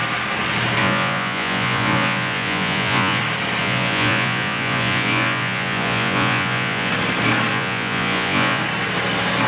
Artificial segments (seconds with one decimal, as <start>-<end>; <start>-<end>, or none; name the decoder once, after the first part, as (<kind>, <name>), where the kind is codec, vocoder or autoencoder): 0.8-3.2 (vocoder, Vocos); 3.6-6.9; 7.5-8.6